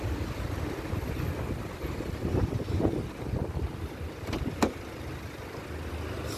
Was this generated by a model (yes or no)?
no